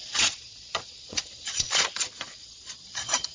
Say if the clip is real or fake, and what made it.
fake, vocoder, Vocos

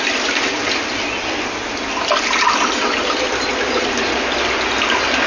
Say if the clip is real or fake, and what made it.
real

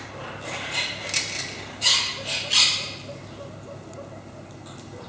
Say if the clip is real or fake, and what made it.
real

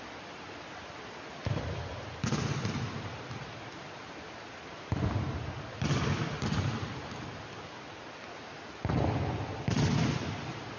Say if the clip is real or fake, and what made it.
real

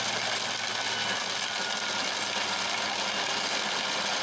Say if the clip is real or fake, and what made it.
real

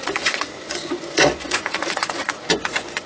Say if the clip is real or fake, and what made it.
fake, vocoder, Vocos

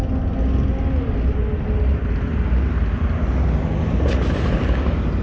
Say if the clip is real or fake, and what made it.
real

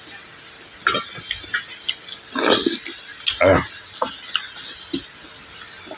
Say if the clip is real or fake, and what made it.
real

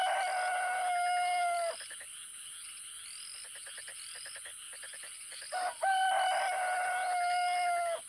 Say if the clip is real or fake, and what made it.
real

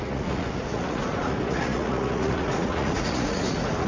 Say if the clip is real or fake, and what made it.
fake, vocoder, Vocos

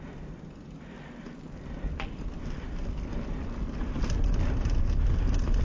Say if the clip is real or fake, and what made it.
real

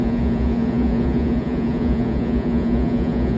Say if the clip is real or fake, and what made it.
fake, vocoder, Vocos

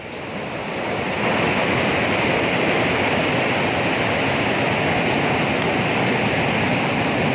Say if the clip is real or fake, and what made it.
real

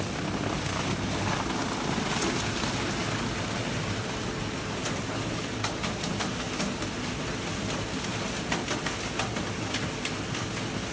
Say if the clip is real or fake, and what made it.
real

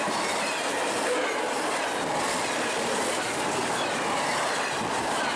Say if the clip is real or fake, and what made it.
real